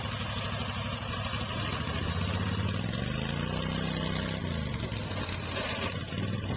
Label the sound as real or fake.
real